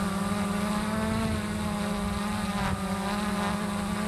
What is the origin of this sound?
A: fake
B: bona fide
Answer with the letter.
B